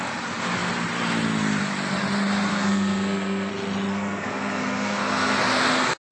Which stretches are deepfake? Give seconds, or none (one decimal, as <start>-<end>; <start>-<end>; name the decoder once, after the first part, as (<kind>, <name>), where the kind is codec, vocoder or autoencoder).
2.5-3.5 (codec, SNAC); 3.9-5.4